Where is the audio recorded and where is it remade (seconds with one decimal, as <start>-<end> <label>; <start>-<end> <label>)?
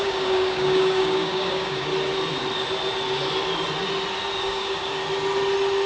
0.0-1.9 remade; 1.9-4.4 recorded; 4.4-5.0 remade; 5.0-5.9 recorded